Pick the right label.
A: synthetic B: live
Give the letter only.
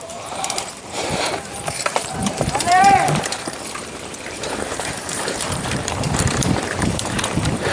A